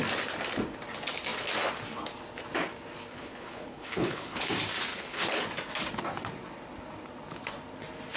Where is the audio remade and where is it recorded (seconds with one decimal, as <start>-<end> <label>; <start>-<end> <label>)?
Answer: 0.0-3.1 recorded; 3.1-4.5 remade; 4.5-4.9 recorded; 4.9-5.4 remade; 5.4-8.2 recorded